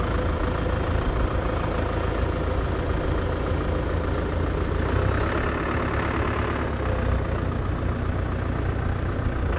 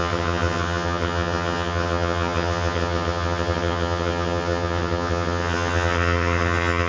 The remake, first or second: second